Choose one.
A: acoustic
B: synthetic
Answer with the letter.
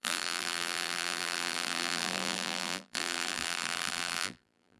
B